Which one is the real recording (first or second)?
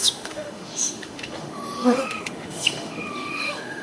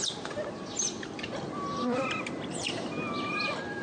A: second